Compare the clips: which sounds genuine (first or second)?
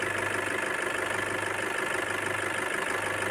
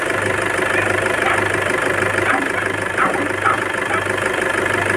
first